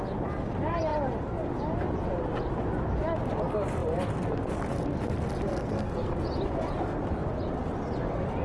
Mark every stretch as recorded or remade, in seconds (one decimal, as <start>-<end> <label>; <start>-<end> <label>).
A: 0.0-5.5 recorded; 5.5-6.1 remade; 6.1-8.4 recorded